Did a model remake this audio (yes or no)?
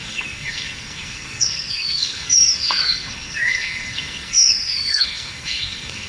yes